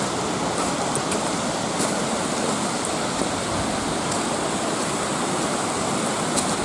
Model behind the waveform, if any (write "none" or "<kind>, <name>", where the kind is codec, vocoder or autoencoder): none